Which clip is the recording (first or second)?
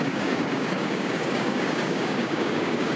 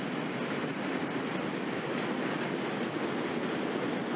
second